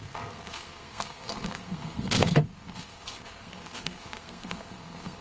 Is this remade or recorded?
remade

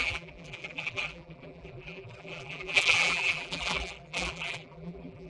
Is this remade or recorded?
remade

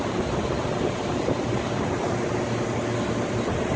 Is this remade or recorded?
recorded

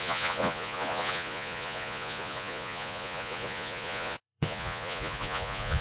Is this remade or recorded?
remade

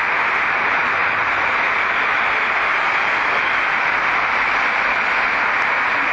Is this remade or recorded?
recorded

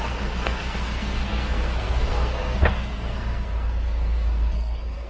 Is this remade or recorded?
remade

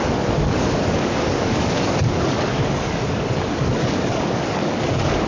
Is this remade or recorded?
remade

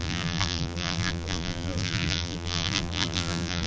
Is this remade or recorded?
remade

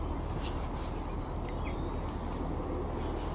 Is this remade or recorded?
recorded